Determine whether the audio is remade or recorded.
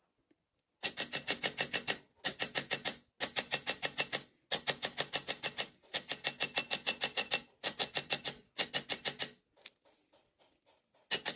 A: recorded